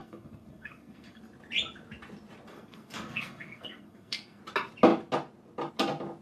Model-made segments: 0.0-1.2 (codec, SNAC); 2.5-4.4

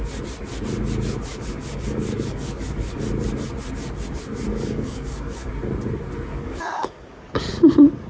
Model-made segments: 1.3-3.0 (codec, DAC); 4.5-5.5; 6.3-7.5

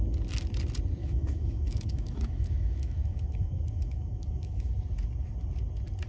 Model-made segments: 1.0-4.7 (autoencoder, DAC-VAE)

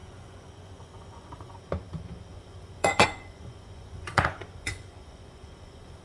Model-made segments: 0.0-1.6 (vocoder, Vocos); 2.3-6.0